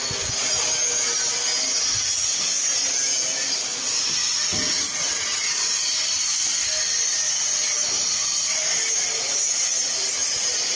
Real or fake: real